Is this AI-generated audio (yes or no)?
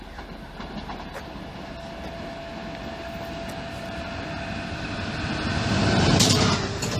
no